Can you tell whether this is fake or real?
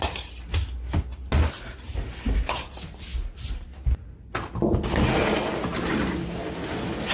real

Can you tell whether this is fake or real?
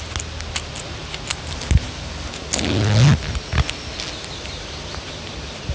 real